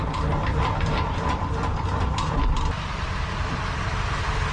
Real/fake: fake